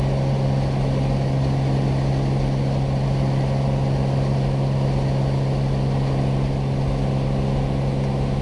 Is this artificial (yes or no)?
no